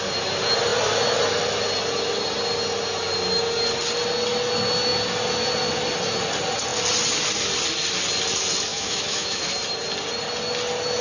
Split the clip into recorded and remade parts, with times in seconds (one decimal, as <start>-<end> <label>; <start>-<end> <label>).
0.0-8.7 recorded; 8.7-9.4 remade; 9.4-11.0 recorded